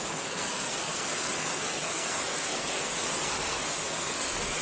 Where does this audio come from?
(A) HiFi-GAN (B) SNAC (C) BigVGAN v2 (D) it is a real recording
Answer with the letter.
B